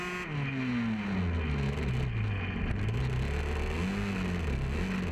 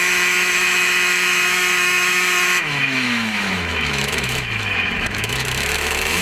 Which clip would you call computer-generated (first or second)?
second